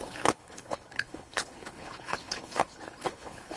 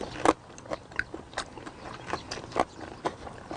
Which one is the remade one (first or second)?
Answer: first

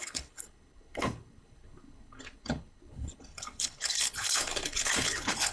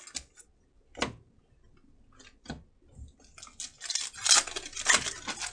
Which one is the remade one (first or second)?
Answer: first